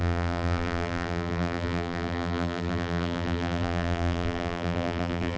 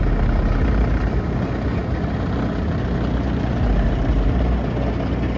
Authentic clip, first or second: second